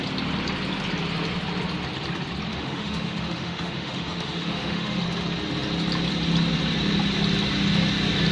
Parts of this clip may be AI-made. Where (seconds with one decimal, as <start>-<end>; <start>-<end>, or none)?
2.5-5.0